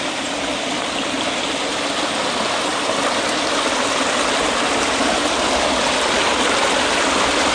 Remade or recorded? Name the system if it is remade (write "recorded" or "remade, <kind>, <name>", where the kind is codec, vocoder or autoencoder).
recorded